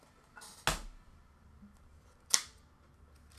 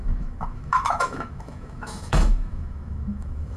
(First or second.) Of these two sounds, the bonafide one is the first